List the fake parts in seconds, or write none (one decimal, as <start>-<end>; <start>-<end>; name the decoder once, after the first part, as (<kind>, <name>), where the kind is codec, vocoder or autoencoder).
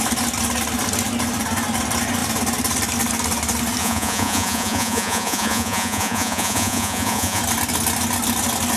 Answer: 3.8-7.4 (vocoder, Vocos)